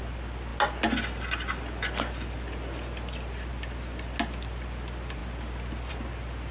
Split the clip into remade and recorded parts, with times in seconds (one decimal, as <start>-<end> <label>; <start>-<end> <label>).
0.0-6.5 recorded

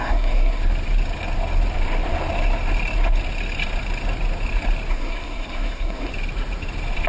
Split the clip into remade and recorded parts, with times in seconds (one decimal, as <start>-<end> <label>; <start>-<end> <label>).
0.0-0.6 remade; 0.6-4.9 recorded; 4.9-6.1 remade; 6.1-7.1 recorded